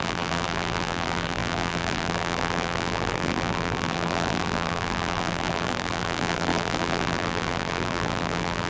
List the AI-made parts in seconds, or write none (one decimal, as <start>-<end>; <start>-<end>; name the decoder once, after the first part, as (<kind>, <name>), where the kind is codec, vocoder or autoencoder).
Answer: 0.0-8.7 (vocoder, BigVGAN v2)